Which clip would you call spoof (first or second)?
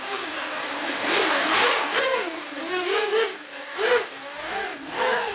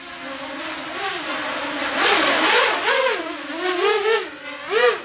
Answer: first